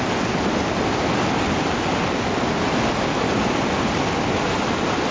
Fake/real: real